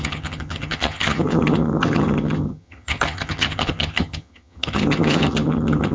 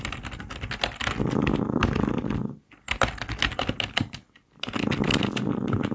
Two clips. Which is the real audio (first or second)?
second